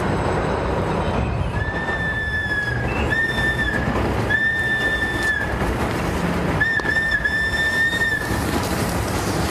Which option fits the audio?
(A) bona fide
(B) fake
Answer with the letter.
B